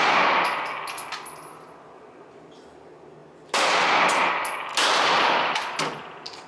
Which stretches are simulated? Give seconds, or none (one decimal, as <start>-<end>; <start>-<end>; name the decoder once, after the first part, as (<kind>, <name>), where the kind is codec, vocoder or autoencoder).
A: 1.0-1.8 (vocoder, BigVGAN v2); 4.7-6.5